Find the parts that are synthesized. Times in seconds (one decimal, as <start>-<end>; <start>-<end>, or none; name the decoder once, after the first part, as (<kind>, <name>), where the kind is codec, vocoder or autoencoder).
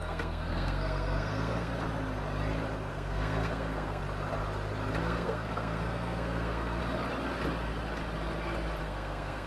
0.0-1.7 (codec, SNAC); 2.9-4.0; 5.0-6.8; 8.8-9.5